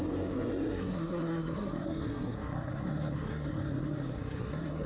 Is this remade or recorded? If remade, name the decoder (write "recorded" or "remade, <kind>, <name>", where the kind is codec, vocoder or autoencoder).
remade, codec, SNAC